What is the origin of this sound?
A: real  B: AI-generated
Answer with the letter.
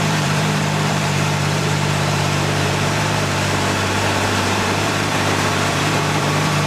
B